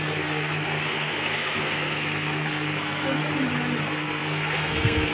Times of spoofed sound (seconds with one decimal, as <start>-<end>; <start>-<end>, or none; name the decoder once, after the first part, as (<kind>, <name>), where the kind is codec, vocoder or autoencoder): 0.0-3.2 (codec, SNAC); 3.8-5.1